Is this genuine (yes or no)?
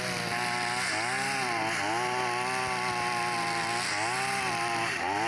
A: yes